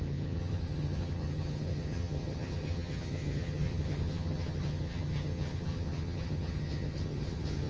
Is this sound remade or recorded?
remade